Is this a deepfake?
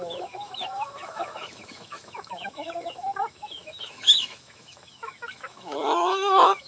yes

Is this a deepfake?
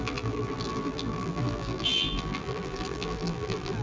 yes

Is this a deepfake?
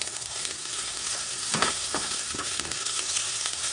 yes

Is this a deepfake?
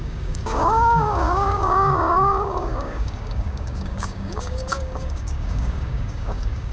yes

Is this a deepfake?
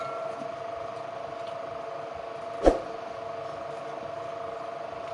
no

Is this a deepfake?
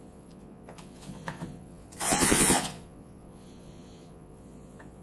yes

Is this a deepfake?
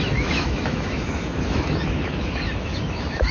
yes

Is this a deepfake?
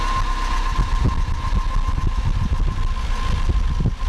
no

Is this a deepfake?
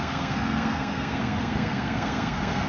yes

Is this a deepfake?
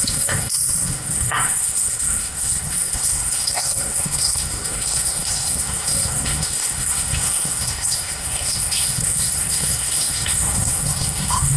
yes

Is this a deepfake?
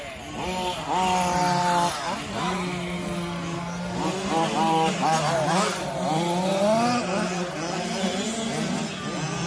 no